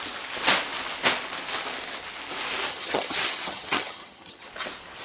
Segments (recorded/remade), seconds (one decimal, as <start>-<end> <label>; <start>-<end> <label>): 0.0-2.7 recorded; 2.7-4.5 remade; 4.5-5.0 recorded